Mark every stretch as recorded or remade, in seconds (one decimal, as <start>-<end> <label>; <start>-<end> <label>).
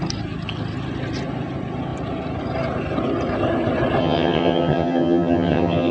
0.0-4.0 recorded; 4.0-5.9 remade